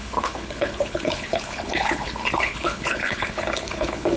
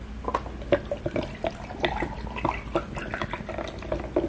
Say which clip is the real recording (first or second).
second